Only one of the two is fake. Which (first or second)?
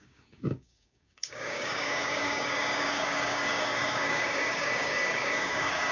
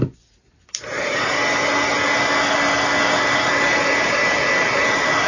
first